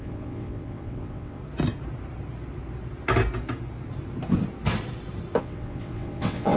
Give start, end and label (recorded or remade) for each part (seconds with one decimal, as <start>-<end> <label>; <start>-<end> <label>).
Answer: 0.0-1.4 remade; 1.4-5.4 recorded; 5.4-6.6 remade